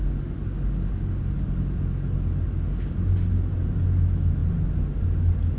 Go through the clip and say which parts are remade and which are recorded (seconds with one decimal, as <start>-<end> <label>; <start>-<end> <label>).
0.0-5.6 recorded